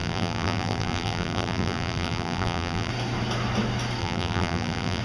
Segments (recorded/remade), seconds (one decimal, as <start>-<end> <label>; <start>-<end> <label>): 0.0-2.9 remade; 2.9-4.0 recorded; 4.0-5.0 remade